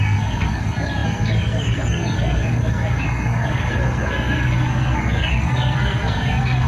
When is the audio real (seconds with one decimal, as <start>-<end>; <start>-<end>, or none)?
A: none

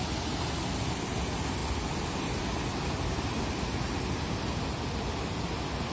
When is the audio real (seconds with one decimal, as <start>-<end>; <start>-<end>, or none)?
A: 0.0-5.9

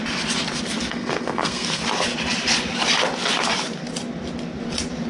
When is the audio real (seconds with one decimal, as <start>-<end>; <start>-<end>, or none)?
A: 0.0-0.9; 1.8-5.1

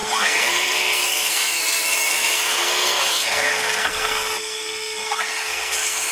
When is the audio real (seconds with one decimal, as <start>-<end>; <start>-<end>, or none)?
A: none

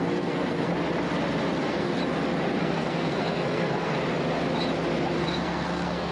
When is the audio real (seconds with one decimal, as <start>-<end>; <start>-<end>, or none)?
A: 0.7-1.6; 2.0-2.6; 4.0-5.2

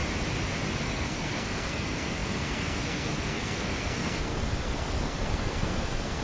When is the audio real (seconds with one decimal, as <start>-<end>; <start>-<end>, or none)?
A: 0.0-0.8